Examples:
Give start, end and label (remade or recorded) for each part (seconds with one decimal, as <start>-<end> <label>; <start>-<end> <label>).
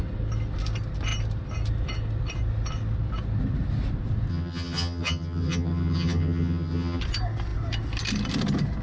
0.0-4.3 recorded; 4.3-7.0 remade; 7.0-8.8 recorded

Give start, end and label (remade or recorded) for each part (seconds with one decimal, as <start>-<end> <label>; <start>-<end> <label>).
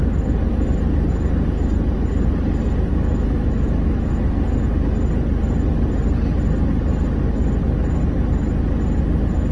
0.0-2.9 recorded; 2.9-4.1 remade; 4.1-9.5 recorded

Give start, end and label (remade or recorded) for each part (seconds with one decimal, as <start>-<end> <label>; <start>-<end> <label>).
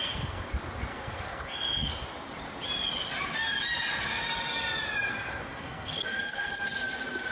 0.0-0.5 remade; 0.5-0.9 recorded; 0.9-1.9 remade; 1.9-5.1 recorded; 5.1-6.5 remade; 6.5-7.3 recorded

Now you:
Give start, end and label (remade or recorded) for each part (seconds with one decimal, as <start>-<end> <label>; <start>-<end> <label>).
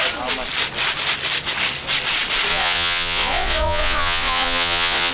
0.0-2.5 recorded; 2.5-5.1 remade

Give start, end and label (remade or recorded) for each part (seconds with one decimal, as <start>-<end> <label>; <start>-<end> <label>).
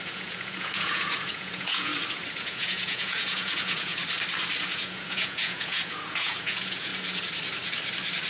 0.0-1.9 remade; 1.9-2.4 recorded; 2.4-4.0 remade; 4.0-4.6 recorded; 4.6-6.9 remade; 6.9-8.3 recorded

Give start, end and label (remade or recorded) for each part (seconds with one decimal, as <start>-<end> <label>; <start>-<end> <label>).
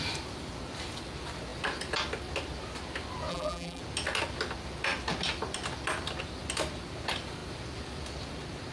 0.0-3.3 recorded; 3.3-3.8 remade; 3.8-8.7 recorded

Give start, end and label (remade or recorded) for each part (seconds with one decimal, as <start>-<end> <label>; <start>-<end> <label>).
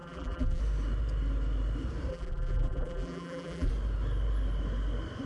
0.0-0.6 remade; 0.6-2.1 recorded; 2.1-3.7 remade; 3.7-5.3 recorded